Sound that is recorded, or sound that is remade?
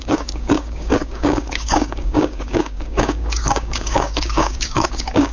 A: remade